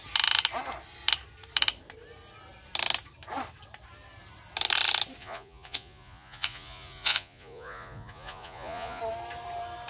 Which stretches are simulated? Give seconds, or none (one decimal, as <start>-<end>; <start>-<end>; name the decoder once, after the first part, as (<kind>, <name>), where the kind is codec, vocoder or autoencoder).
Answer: 5.2-9.0 (vocoder, Vocos)